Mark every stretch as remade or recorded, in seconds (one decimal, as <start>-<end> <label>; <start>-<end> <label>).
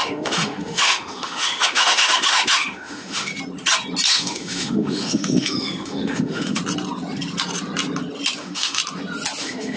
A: 0.0-3.3 remade; 3.3-4.1 recorded; 4.1-6.6 remade; 6.6-8.4 recorded; 8.4-8.8 remade; 8.8-9.4 recorded; 9.4-9.8 remade